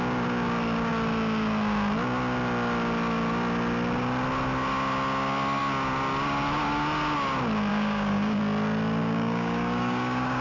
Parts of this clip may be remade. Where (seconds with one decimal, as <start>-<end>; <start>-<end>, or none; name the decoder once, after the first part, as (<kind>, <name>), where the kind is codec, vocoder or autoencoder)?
7.7-8.4 (codec, DAC); 9.0-10.4